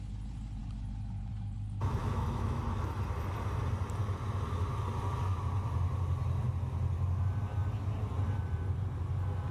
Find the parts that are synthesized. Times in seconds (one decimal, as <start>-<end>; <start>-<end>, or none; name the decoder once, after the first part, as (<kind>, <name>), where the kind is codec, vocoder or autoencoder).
2.0-2.6 (autoencoder, DAC-VAE)